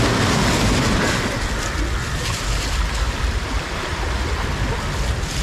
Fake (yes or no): no